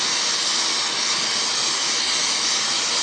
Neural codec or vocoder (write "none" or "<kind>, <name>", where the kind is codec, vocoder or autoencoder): none